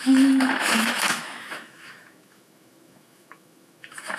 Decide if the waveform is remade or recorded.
remade